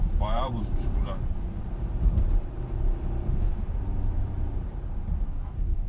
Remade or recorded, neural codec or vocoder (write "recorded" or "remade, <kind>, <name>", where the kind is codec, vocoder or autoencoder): remade, vocoder, BigVGAN v2